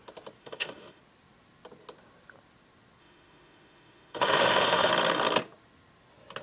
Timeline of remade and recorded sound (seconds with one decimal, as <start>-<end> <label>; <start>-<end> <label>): 0.0-0.4 recorded; 0.4-1.0 remade; 1.0-3.0 recorded; 3.0-4.9 remade; 4.9-6.4 recorded